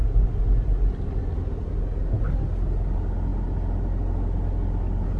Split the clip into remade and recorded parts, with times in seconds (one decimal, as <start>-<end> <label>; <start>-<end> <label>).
0.0-5.2 recorded